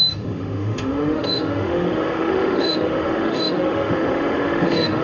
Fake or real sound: fake